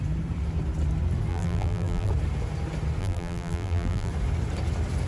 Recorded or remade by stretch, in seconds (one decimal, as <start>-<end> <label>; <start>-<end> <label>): 0.0-1.3 recorded; 1.3-2.1 remade; 2.1-3.0 recorded; 3.0-4.1 remade; 4.1-5.1 recorded